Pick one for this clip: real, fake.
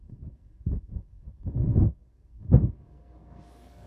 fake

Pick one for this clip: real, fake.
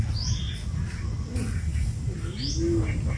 real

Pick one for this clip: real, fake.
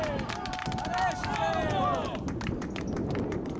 real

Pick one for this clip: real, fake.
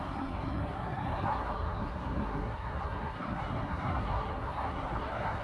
fake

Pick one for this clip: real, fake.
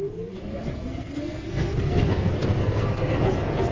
fake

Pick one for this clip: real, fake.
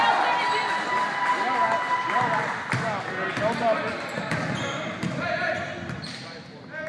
real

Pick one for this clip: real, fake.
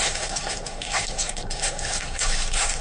fake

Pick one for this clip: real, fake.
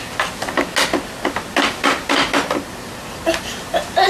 real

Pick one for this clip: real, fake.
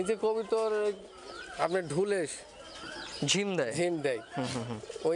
real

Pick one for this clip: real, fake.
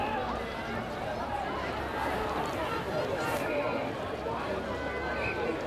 real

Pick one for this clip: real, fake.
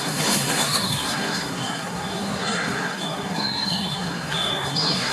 fake